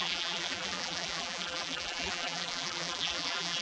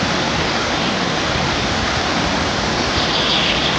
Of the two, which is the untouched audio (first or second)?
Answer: second